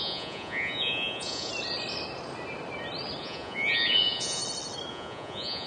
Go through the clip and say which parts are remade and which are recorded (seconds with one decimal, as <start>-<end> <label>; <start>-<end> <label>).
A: 0.0-1.5 remade; 1.5-3.2 recorded; 3.2-4.4 remade; 4.4-4.9 recorded; 4.9-5.7 remade